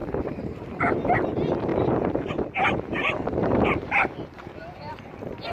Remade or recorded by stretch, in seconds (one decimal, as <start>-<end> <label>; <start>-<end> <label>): 0.0-1.0 remade; 1.0-1.7 recorded; 1.7-2.3 remade; 2.3-3.4 recorded; 3.4-4.4 remade; 4.4-5.5 recorded